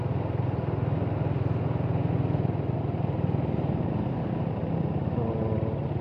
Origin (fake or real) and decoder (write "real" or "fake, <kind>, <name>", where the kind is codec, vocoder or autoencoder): real